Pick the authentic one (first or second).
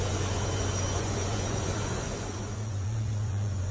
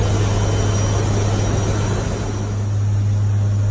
second